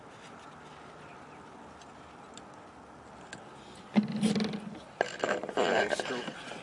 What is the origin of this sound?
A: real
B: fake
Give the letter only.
A